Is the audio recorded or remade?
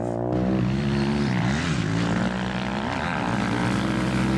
recorded